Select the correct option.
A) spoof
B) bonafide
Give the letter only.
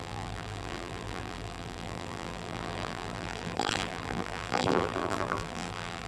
A